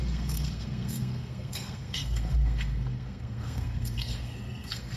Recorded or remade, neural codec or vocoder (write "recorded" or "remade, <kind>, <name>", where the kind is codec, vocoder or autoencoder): remade, codec, SNAC